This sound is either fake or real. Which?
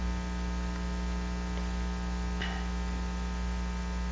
real